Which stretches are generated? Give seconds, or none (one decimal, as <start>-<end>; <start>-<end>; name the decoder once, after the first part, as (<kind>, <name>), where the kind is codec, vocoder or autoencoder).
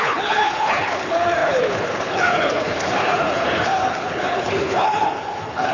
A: 0.0-5.7 (codec, HILCodec)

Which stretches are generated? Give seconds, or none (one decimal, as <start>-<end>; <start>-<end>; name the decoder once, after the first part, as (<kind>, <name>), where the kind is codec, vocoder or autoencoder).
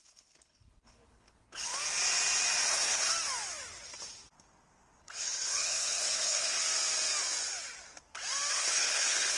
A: 0.0-1.7 (codec, HILCodec); 2.7-3.1; 5.0-6.6; 8.5-9.4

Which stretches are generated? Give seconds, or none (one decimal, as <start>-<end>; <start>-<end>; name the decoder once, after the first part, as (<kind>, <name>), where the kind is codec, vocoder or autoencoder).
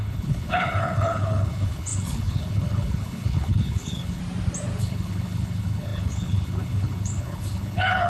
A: 0.0-4.2 (codec, HILCodec); 4.8-8.1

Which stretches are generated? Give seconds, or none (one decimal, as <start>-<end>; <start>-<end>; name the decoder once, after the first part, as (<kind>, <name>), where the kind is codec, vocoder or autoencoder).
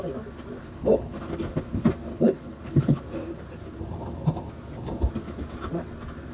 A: 0.6-1.2 (codec, HILCodec); 2.1-3.0